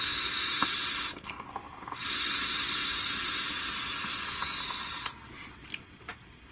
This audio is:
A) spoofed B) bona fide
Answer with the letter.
B